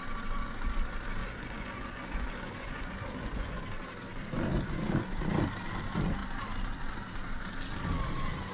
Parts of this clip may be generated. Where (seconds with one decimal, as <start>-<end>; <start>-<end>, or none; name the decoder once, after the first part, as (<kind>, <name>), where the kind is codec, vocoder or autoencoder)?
1.2-3.6 (vocoder, Vocos)